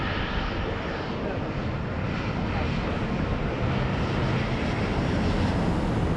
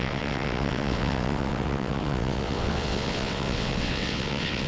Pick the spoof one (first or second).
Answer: second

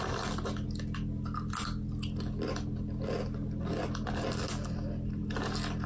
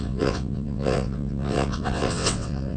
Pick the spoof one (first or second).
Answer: second